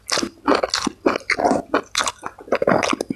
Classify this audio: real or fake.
real